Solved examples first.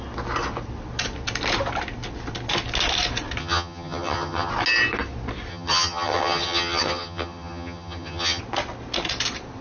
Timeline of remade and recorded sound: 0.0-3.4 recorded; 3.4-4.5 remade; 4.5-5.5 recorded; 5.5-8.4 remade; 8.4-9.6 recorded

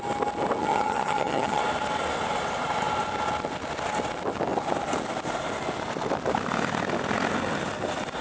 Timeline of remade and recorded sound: 0.0-0.6 recorded; 0.6-1.6 remade; 1.6-8.2 recorded